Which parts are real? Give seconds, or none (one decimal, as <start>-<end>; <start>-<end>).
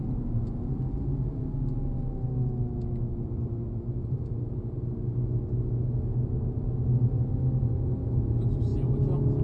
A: 0.0-3.1; 4.6-9.4